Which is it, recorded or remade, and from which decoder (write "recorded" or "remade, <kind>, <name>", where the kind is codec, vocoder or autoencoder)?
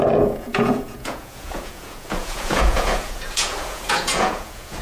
remade, vocoder, Vocos